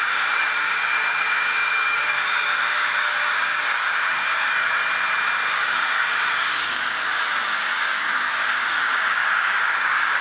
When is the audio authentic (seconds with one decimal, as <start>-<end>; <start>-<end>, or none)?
4.8-5.5